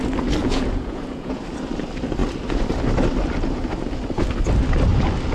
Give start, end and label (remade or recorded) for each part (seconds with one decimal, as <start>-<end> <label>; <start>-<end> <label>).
0.0-0.4 recorded; 0.4-1.4 remade; 1.4-5.3 recorded